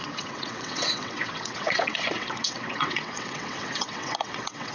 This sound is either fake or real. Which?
fake